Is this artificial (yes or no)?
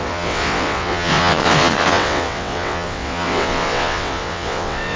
yes